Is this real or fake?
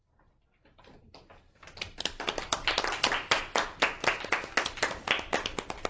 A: real